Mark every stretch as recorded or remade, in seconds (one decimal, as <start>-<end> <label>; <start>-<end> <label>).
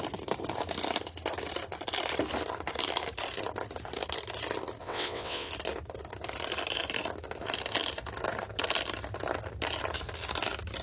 0.0-4.8 recorded; 4.8-5.5 remade; 5.5-10.8 recorded